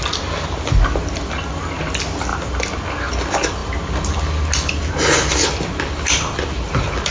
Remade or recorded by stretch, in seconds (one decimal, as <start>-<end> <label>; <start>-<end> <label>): 0.0-7.1 recorded